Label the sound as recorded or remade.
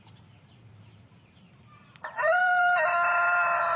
remade